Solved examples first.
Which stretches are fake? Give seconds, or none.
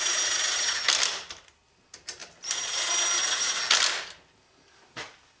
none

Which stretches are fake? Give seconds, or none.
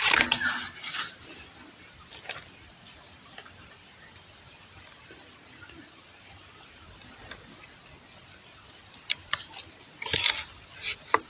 none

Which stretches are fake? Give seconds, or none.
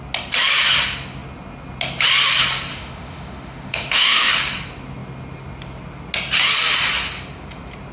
2.7-4.3 (autoencoder, DAC-VAE)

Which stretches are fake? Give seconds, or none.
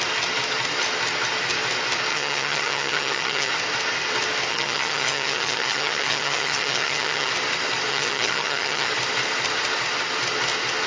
2.1-3.5 (vocoder, HiFi-GAN); 4.5-7.3; 7.9-8.9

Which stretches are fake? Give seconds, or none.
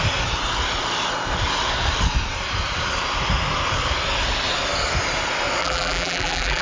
5.6-6.6 (vocoder, BigVGAN v2)